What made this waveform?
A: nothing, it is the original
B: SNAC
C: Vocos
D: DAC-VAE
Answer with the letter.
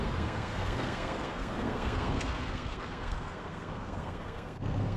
B